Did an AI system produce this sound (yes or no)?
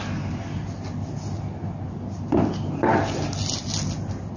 no